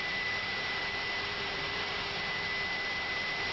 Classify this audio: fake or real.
fake